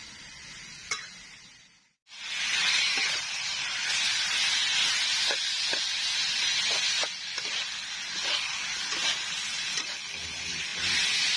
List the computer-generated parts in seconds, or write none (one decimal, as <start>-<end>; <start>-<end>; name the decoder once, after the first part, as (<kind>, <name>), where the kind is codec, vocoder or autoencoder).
2.6-3.3 (vocoder, BigVGAN v2)